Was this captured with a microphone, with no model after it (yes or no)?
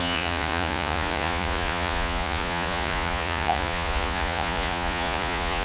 no